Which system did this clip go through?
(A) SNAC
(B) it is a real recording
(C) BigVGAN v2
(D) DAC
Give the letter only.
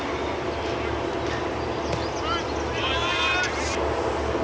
B